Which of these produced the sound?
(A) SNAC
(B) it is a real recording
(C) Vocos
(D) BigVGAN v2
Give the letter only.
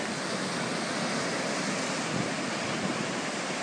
B